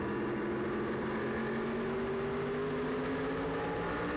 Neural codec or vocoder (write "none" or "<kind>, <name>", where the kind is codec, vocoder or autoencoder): none